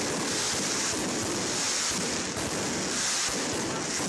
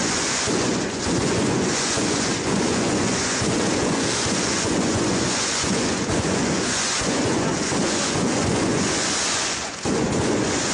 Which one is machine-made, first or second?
second